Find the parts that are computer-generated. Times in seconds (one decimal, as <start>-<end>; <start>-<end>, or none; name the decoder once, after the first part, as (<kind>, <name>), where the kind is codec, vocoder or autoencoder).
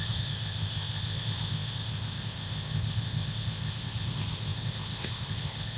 0.0-5.8 (codec, ZipCodec)